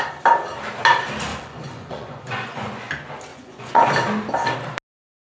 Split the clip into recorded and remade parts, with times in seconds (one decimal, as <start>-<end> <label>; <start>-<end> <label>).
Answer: 0.0-1.3 recorded; 1.3-2.9 remade; 2.9-3.3 recorded; 3.3-3.9 remade; 3.9-5.3 recorded